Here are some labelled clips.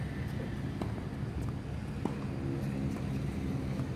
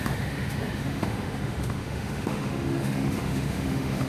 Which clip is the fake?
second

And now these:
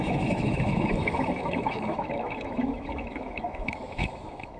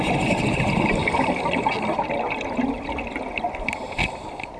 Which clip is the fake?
first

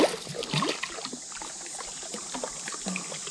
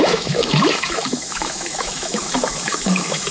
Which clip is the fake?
second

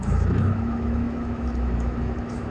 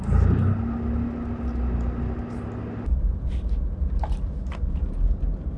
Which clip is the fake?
first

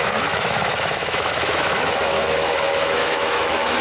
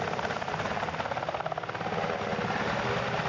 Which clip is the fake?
first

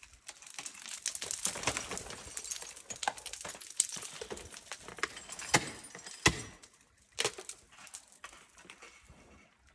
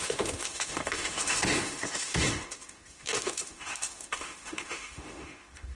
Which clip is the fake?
second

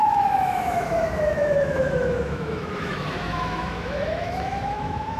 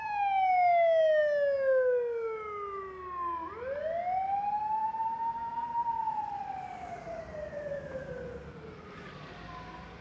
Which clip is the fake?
first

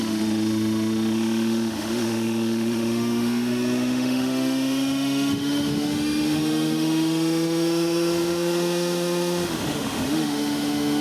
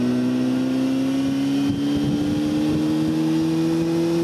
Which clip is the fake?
first